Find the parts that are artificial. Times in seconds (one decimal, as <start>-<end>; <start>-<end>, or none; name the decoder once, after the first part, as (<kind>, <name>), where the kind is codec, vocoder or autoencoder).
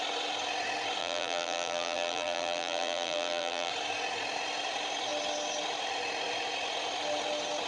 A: 1.0-3.7 (vocoder, BigVGAN v2)